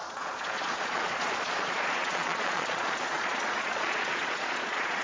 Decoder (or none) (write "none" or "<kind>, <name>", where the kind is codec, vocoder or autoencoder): vocoder, Vocos